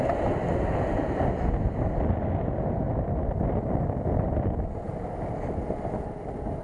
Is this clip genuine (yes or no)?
yes